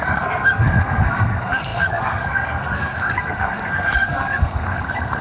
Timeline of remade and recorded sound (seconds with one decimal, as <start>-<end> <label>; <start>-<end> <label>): 0.0-5.2 remade